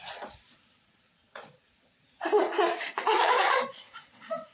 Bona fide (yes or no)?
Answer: no